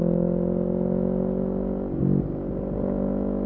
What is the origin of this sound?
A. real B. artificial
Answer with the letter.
A